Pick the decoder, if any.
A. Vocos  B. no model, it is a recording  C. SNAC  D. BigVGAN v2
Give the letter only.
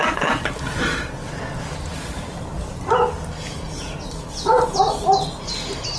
B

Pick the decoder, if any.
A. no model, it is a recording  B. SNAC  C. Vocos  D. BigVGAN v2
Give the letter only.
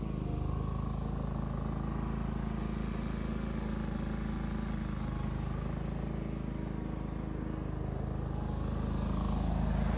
A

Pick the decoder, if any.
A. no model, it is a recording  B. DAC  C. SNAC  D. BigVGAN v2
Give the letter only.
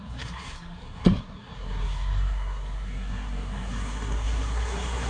C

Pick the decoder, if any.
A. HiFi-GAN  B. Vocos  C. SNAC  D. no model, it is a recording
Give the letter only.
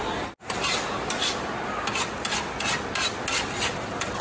D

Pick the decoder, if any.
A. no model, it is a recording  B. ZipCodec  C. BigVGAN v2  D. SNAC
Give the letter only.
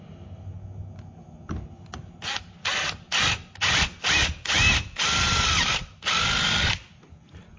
A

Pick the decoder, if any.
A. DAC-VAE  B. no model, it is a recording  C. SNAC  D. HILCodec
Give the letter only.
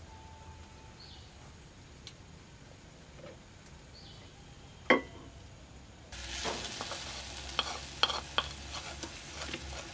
B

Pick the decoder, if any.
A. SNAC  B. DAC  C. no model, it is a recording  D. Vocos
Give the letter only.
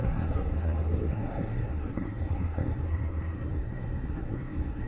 A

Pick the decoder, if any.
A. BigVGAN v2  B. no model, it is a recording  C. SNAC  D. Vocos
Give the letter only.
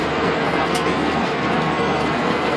C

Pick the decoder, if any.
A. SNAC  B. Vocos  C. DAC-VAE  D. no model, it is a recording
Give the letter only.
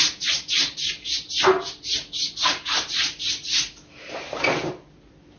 D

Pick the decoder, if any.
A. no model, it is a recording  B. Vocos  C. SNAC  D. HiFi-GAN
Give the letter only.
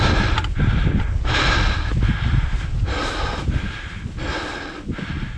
A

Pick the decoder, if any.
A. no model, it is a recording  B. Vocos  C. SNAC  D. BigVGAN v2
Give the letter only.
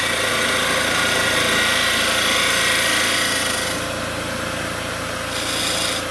A